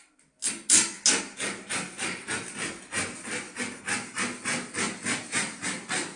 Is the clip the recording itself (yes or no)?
yes